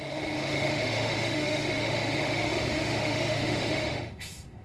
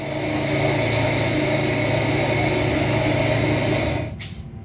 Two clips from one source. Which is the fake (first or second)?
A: first